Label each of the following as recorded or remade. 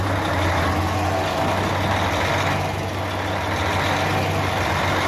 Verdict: recorded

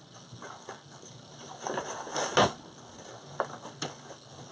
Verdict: recorded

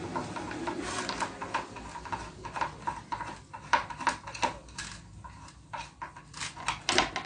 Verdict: recorded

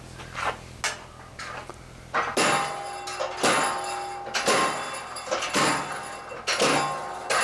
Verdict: recorded